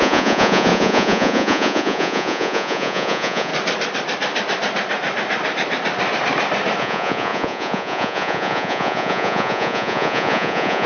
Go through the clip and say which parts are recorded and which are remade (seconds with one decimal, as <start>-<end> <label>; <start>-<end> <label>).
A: 0.0-3.5 remade; 3.5-6.8 recorded; 6.8-10.9 remade